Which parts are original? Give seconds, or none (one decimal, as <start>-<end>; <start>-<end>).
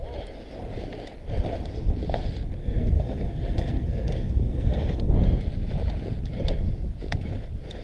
0.0-2.6; 5.1-7.8